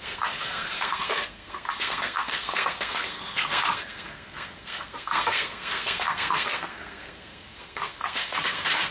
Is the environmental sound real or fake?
fake